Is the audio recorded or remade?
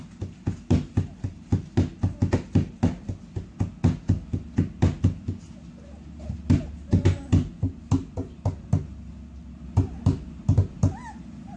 recorded